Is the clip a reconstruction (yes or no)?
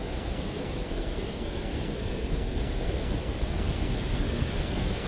yes